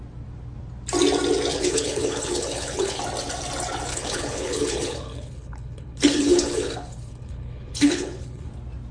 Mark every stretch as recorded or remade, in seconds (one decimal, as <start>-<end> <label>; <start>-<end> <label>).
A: 0.0-1.5 recorded; 1.5-3.0 remade; 3.0-3.9 recorded; 3.9-8.5 remade; 8.5-8.9 recorded